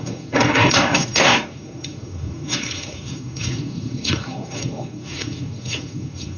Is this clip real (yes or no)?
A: no